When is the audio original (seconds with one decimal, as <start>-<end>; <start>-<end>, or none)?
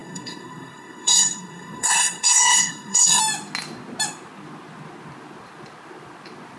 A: 3.2-6.6